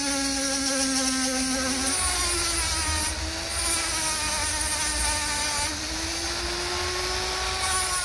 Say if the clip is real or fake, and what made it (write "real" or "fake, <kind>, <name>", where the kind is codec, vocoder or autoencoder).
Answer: real